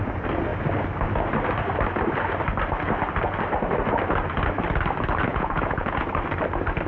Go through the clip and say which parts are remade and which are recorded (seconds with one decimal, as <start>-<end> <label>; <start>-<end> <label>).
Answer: 0.0-5.3 recorded; 5.3-6.1 remade; 6.1-6.9 recorded